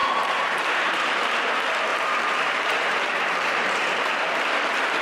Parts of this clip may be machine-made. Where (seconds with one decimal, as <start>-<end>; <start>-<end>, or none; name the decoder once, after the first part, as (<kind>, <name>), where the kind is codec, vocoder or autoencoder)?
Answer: 0.0-1.0 (vocoder, BigVGAN v2); 1.9-4.1